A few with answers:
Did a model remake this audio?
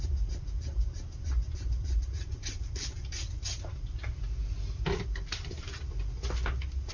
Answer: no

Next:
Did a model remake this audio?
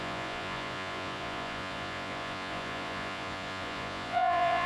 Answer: yes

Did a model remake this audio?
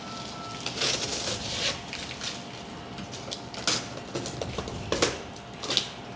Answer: no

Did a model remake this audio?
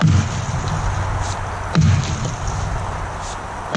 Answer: no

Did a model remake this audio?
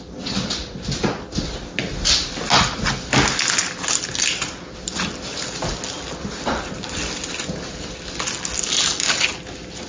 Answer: no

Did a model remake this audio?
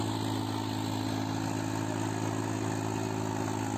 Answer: no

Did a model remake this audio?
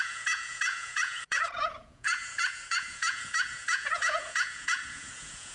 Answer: yes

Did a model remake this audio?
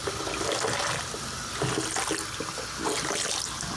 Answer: no